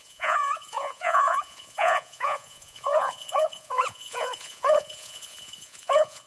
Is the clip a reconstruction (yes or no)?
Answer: yes